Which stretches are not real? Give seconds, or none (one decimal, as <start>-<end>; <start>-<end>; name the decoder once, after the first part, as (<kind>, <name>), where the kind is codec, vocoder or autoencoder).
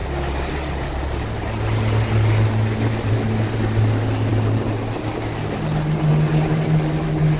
none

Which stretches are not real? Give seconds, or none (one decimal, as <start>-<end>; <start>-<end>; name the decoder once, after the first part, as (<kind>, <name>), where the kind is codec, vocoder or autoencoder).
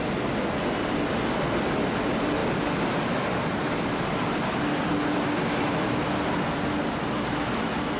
none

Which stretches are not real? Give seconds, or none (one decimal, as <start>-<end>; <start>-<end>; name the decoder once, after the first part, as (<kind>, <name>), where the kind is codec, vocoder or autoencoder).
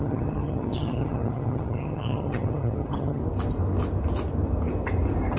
0.0-3.2 (vocoder, HiFi-GAN)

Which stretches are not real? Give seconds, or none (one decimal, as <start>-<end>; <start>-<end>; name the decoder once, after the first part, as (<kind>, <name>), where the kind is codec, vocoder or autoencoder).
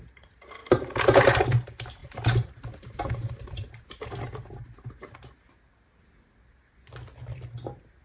none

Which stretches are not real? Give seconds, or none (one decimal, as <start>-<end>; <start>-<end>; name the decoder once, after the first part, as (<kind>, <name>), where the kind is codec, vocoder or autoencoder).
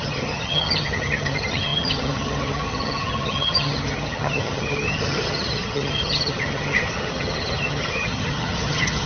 0.0-9.1 (vocoder, HiFi-GAN)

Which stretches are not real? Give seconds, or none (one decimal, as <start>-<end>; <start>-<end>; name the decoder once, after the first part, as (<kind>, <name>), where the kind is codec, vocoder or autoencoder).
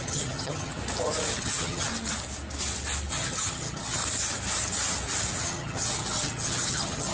0.0-0.8 (vocoder, HiFi-GAN); 1.4-1.9; 3.1-4.0; 5.4-7.1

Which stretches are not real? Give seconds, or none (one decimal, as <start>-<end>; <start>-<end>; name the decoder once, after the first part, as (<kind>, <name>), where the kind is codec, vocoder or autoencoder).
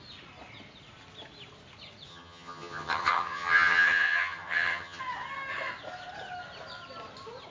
2.1-5.0 (vocoder, HiFi-GAN)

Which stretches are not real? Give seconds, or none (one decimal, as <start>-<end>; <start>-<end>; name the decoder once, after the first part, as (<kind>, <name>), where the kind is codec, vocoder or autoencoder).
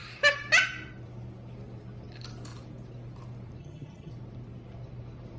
3.6-4.1 (vocoder, HiFi-GAN)